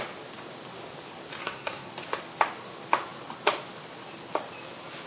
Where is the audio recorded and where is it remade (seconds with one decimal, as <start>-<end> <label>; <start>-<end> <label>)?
0.0-1.4 recorded; 1.4-1.9 remade; 1.9-5.1 recorded